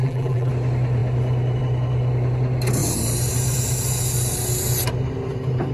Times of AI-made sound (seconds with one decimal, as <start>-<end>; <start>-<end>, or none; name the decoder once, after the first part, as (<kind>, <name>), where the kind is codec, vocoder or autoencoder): 0.0-0.5 (vocoder, BigVGAN v2)